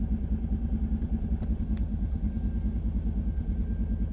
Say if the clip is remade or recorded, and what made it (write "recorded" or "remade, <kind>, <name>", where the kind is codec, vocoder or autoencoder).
recorded